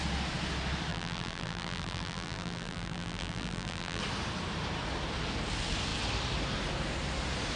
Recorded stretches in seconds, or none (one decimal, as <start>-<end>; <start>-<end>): 0.0-0.9; 4.0-7.6